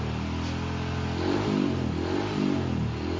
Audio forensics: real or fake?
real